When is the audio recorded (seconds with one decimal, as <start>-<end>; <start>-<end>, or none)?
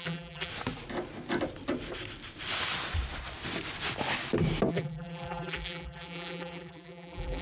0.5-4.7